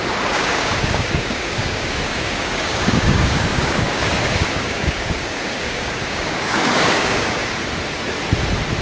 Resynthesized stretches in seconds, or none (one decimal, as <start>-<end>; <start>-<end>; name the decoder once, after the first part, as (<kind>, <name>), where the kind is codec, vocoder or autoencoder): 0.0-7.4 (codec, DAC)